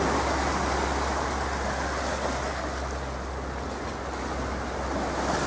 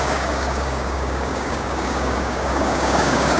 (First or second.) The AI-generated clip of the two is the second